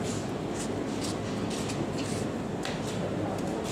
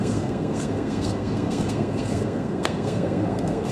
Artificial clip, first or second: second